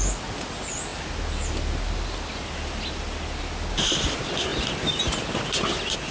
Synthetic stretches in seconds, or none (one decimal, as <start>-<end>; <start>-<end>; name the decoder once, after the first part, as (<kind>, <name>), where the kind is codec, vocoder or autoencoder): none